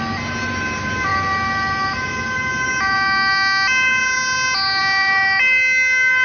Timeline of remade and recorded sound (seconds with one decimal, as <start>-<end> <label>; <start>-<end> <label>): 0.0-6.2 recorded